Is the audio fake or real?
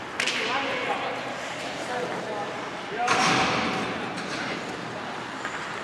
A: real